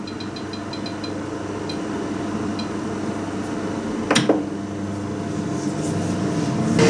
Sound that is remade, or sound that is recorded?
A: recorded